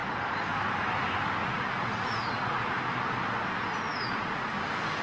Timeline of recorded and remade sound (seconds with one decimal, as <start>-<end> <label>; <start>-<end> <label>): 0.0-1.4 recorded; 1.4-2.8 remade; 2.8-3.9 recorded; 3.9-4.5 remade; 4.5-5.0 recorded